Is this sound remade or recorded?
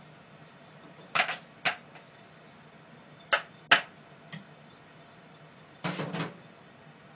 recorded